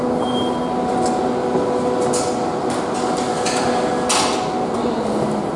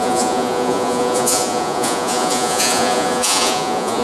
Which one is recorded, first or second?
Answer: first